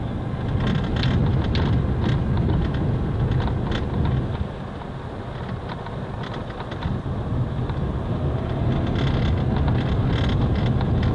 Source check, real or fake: real